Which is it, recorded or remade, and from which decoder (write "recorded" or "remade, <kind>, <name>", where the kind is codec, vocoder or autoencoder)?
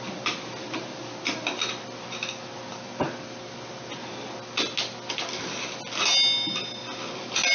recorded